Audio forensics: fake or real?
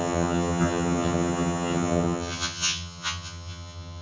fake